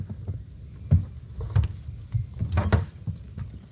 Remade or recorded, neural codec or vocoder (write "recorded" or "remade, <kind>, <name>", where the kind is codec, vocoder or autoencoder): recorded